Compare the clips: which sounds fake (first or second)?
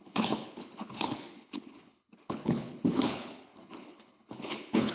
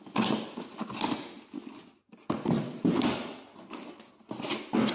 first